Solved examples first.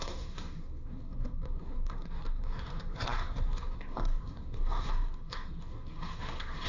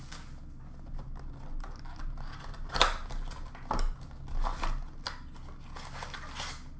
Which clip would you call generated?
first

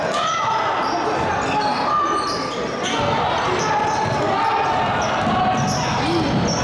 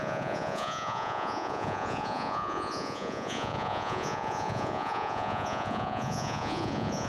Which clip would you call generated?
second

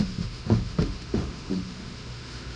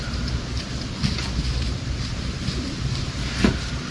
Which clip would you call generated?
first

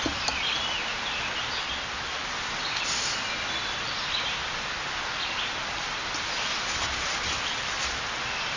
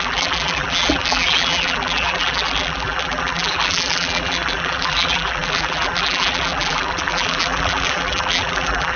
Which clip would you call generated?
second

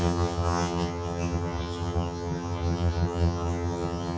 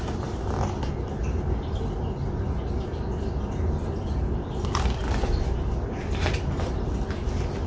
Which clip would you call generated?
first